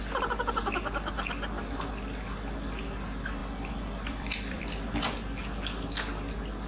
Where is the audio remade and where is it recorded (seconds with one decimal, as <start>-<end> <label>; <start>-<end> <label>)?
0.0-3.4 recorded; 3.4-4.6 remade; 4.6-6.7 recorded